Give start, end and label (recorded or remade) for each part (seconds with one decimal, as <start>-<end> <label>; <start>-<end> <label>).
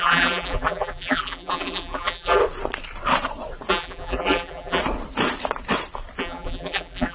0.0-2.4 remade; 2.4-3.7 recorded; 3.7-4.8 remade; 4.8-6.2 recorded; 6.2-7.1 remade